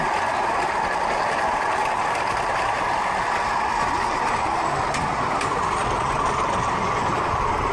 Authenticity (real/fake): real